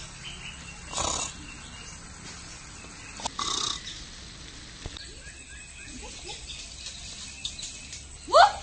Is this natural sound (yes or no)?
yes